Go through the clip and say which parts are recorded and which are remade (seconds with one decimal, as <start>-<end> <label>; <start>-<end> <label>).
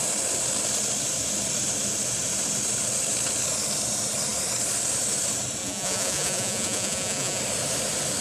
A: 0.0-5.6 recorded; 5.6-7.4 remade; 7.4-8.2 recorded